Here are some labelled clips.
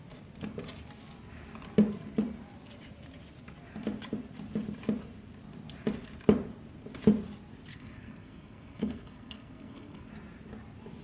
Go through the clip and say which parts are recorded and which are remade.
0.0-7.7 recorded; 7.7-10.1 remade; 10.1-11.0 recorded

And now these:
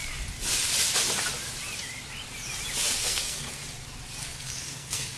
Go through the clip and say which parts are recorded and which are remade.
0.0-2.8 recorded; 2.8-3.6 remade; 3.6-4.2 recorded; 4.2-5.2 remade

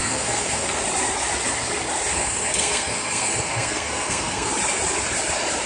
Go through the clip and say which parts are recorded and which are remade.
0.0-0.8 remade; 0.8-2.1 recorded; 2.1-4.5 remade; 4.5-5.7 recorded

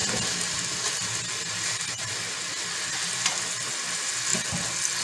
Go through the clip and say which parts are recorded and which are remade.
0.0-5.0 recorded

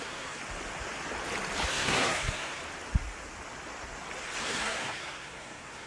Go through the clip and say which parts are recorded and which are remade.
0.0-0.4 remade; 0.4-1.7 recorded; 1.7-2.6 remade; 2.6-4.4 recorded; 4.4-5.9 remade

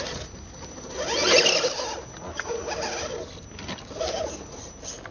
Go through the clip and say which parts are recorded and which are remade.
0.0-5.1 recorded

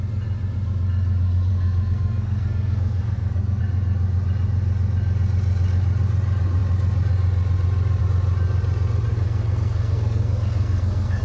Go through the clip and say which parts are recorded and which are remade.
0.0-1.5 recorded; 1.5-3.6 remade; 3.6-9.1 recorded; 9.1-11.2 remade

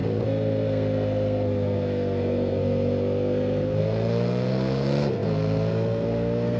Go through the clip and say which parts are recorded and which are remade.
0.0-6.6 remade